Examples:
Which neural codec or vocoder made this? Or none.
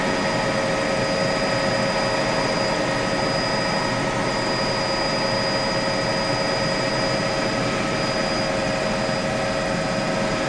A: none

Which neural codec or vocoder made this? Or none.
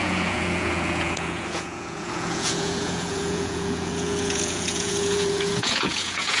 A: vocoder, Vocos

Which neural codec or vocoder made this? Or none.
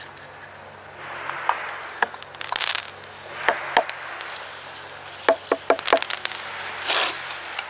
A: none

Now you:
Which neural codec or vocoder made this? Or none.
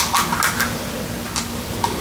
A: none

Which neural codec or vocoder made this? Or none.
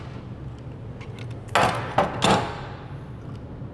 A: none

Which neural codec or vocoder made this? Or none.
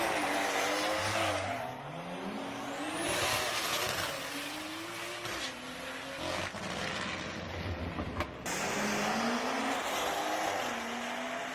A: none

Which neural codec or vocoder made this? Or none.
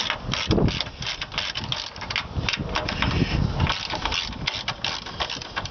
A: none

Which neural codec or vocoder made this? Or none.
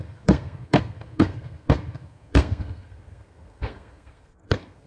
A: codec, SNAC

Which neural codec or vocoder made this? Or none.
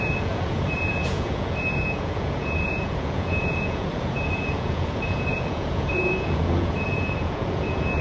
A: vocoder, Vocos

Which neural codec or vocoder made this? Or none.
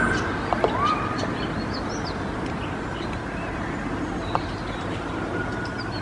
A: none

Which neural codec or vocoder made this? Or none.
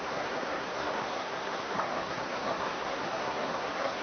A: codec, SNAC